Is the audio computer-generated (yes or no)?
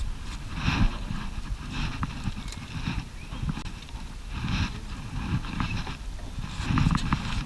no